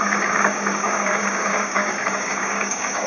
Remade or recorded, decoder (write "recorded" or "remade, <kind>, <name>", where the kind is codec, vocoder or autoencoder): remade, codec, DAC